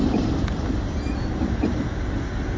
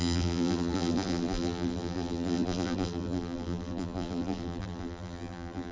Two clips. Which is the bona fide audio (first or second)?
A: first